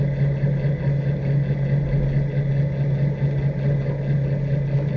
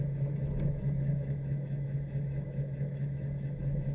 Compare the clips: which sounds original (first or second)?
first